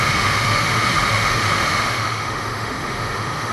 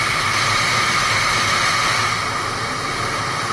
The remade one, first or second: first